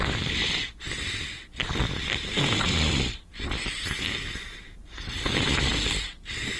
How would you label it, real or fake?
real